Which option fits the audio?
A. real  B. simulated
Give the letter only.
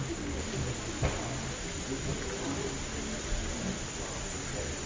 A